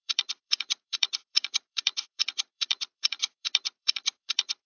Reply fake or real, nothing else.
fake